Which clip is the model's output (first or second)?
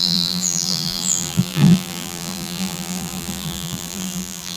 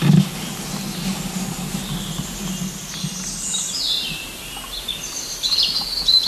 first